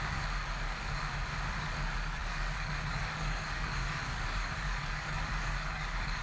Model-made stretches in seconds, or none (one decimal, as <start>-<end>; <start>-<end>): 0.0-1.1; 1.6-6.2

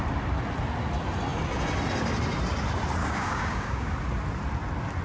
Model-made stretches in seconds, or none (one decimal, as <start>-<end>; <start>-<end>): 3.0-3.9

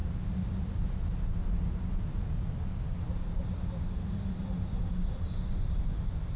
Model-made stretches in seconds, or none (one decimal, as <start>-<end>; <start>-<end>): none

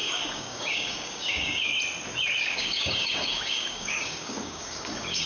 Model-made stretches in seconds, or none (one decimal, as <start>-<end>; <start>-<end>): 0.0-1.7; 2.4-5.3

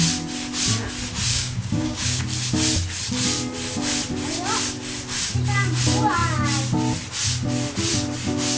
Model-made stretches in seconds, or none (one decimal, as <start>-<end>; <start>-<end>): 1.3-2.2

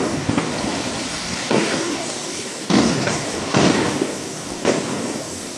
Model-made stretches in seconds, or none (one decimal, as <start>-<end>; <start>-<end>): 0.0-0.5; 1.1-5.6

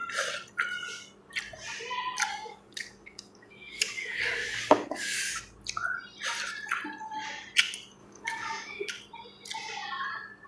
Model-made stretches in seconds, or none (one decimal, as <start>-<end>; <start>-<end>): 2.3-5.2; 8.0-8.9